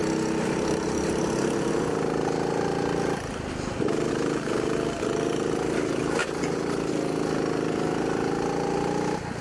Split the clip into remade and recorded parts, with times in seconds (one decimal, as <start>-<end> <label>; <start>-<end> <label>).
0.0-9.4 recorded

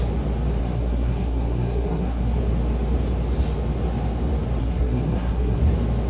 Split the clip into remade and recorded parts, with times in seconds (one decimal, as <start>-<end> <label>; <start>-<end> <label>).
0.0-0.6 recorded; 0.6-2.4 remade; 2.4-4.6 recorded; 4.6-5.6 remade; 5.6-6.1 recorded

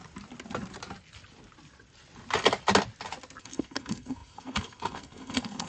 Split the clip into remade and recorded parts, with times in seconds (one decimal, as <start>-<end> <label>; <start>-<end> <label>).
0.0-3.4 recorded; 3.4-5.7 remade

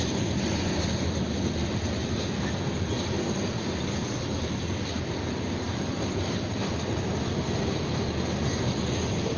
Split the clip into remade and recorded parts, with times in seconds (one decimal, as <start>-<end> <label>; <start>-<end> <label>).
0.0-9.4 recorded

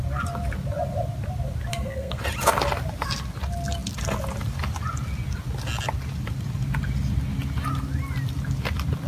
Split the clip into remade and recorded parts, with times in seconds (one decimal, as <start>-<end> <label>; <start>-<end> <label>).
0.0-1.7 recorded; 1.7-2.2 remade; 2.2-9.1 recorded

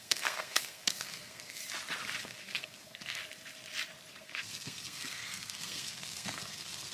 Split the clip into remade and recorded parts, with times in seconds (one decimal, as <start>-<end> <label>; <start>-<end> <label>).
0.0-1.6 remade; 1.6-2.2 recorded; 2.2-3.2 remade; 3.2-4.1 recorded; 4.1-6.9 remade

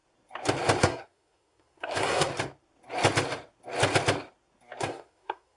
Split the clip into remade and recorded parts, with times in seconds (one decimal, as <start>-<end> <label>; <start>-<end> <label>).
0.0-0.8 recorded; 0.8-2.3 remade; 2.3-4.8 recorded; 4.8-5.6 remade

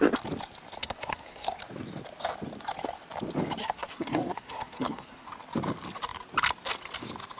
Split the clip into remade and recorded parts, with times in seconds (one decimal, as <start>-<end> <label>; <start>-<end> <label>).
0.0-0.8 recorded; 0.8-1.6 remade; 1.6-3.6 recorded; 3.6-5.3 remade; 5.3-7.4 recorded